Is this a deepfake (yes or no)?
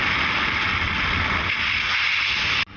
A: no